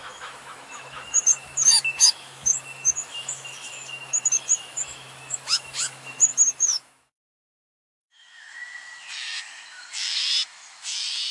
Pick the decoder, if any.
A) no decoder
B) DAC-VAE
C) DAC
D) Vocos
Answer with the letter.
B